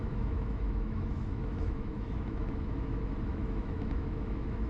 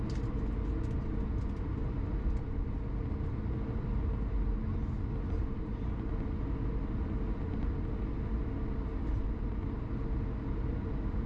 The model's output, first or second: first